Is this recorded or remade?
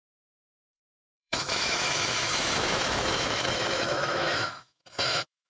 remade